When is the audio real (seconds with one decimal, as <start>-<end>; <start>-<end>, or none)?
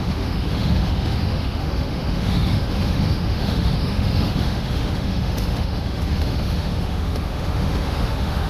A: none